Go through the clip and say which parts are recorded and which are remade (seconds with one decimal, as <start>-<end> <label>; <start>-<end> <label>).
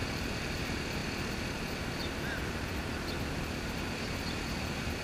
0.0-5.0 recorded